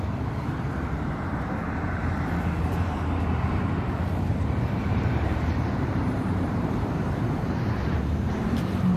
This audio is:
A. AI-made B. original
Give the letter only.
A